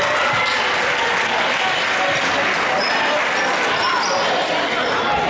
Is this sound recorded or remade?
recorded